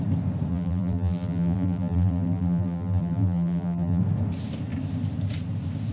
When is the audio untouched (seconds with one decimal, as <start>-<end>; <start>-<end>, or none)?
0.0-0.5; 4.0-5.9